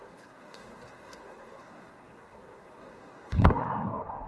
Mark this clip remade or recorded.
remade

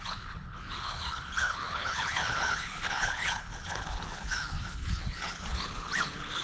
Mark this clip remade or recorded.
remade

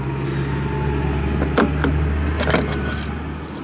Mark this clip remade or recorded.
recorded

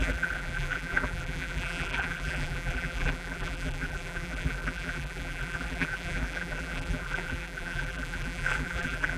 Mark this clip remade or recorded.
remade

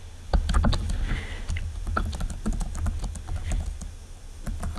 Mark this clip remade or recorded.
recorded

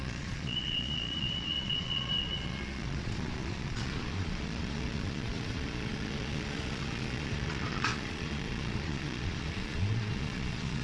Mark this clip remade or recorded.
remade